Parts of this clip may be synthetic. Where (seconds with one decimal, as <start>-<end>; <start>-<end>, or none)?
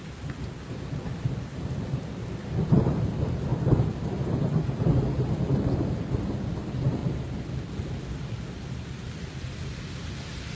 none